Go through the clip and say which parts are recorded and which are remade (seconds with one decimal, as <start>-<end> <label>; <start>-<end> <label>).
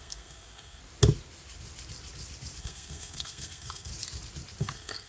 0.0-0.8 remade; 0.8-2.6 recorded; 2.6-3.9 remade; 3.9-4.6 recorded; 4.6-5.1 remade